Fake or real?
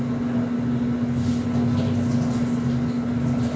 real